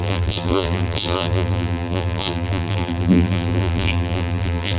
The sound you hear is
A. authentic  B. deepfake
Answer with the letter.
B